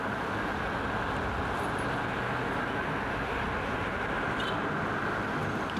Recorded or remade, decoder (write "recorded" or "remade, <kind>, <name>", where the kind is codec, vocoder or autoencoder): recorded